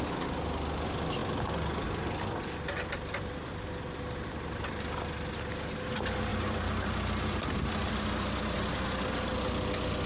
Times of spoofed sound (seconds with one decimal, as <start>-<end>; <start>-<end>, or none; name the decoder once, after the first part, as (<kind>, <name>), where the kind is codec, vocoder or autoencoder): 6.3-7.9 (vocoder, BigVGAN v2)